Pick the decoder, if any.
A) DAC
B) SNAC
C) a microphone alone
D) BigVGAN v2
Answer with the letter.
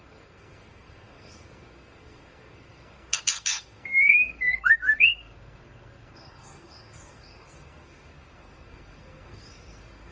B